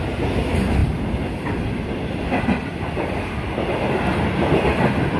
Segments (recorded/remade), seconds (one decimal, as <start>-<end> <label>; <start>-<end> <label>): 0.0-5.2 recorded